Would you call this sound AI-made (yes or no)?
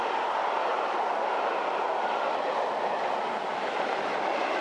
no